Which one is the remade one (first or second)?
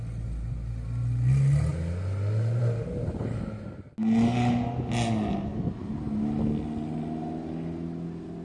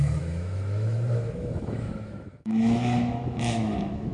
second